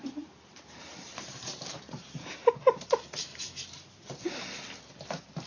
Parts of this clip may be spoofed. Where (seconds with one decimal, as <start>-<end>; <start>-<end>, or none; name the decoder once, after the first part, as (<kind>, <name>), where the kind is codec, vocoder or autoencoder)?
0.0-2.5 (vocoder, BigVGAN v2)